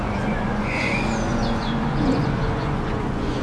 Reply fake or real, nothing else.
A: fake